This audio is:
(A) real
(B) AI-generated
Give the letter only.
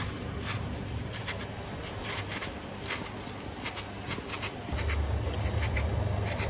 A